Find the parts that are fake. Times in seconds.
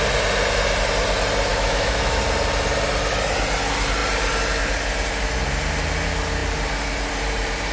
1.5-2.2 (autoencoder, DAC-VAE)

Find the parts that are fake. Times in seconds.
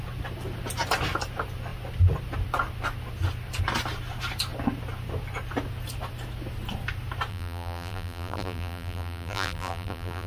7.3-10.3 (vocoder, BigVGAN v2)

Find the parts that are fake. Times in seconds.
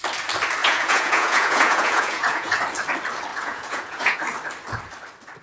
0.6-2.6 (vocoder, Vocos); 3.3-4.2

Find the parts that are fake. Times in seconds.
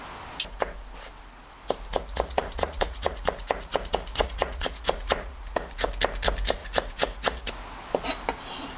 1.9-5.9 (vocoder, Vocos); 6.6-7.5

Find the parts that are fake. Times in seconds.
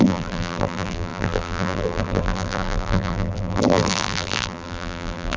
0.0-5.4 (vocoder, BigVGAN v2)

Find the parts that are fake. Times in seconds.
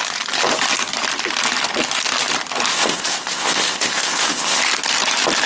2.7-4.6 (codec, ZipCodec)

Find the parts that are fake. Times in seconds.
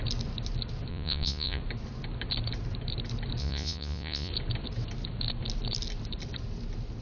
0.9-1.6 (vocoder, Vocos); 3.4-4.3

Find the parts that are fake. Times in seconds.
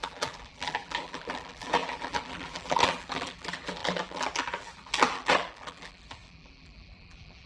0.0-7.5 (vocoder, BigVGAN v2)